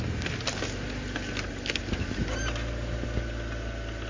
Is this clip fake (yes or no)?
no